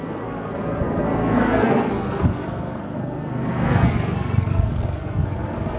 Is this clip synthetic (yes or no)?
yes